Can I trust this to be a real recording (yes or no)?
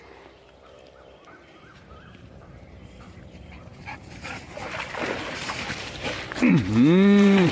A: no